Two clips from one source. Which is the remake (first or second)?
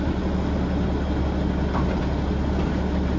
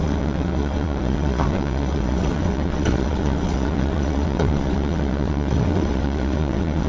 second